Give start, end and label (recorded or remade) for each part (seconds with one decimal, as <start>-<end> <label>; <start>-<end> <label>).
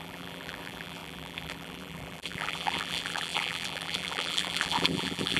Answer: 0.0-5.4 remade